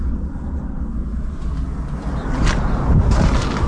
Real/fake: real